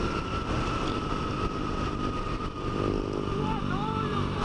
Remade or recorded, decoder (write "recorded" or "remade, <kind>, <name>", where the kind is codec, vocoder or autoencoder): recorded